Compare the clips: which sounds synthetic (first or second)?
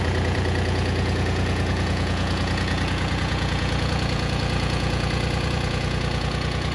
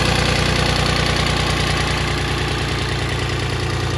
first